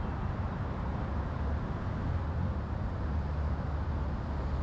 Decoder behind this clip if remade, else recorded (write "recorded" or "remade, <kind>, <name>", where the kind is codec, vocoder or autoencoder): recorded